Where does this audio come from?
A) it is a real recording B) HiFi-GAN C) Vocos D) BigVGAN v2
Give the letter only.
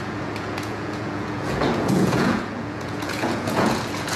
C